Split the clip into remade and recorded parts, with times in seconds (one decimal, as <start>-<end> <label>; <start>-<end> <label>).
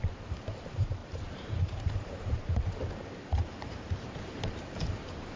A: 0.0-5.4 remade